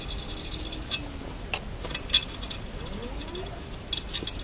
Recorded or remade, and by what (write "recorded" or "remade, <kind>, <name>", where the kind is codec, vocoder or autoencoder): recorded